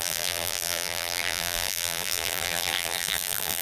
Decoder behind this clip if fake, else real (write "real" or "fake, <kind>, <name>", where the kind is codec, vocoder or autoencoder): fake, vocoder, BigVGAN v2